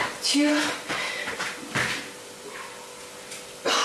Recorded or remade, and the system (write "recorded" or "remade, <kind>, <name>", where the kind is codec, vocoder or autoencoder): recorded